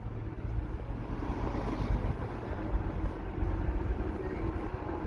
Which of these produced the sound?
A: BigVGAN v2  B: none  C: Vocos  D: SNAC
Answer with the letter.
B